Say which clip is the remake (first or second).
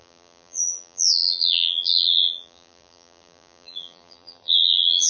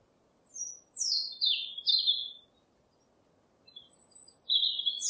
first